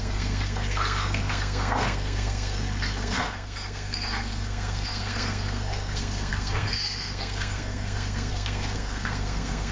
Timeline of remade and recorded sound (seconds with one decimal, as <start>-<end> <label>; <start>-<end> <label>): 0.0-9.7 remade